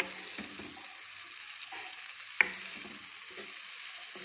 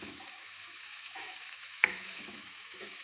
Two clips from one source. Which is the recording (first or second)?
first